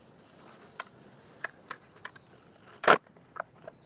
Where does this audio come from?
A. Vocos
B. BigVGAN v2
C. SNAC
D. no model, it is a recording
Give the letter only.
D